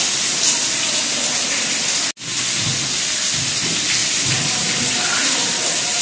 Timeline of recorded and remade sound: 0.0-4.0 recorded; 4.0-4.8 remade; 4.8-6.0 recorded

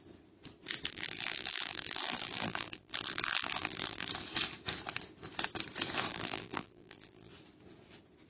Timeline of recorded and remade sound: 0.0-0.9 recorded; 0.9-4.1 remade; 4.1-6.1 recorded; 6.1-7.3 remade; 7.3-8.3 recorded